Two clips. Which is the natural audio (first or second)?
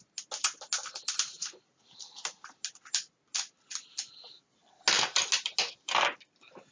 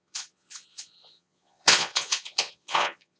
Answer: first